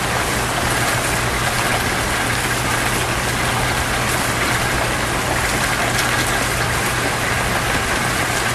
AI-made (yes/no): no